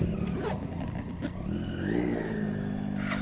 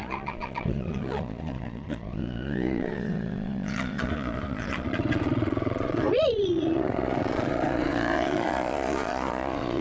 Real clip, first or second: first